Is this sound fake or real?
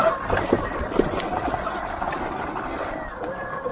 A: real